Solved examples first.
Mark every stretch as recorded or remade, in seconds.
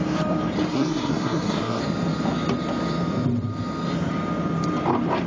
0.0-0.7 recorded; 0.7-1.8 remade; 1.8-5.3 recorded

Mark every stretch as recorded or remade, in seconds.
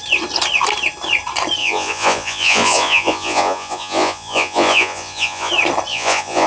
0.0-1.6 recorded; 1.6-5.5 remade; 5.5-5.9 recorded; 5.9-6.5 remade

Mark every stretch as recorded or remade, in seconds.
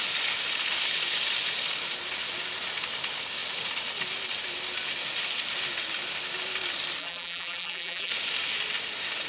0.0-7.0 recorded; 7.0-8.1 remade; 8.1-9.3 recorded